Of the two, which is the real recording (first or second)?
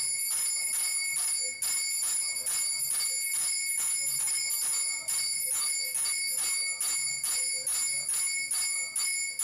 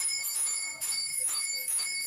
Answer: first